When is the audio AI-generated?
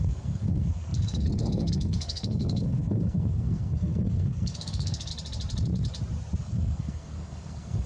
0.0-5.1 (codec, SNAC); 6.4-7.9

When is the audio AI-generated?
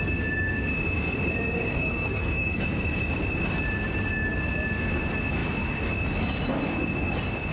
1.7-2.6 (codec, SNAC)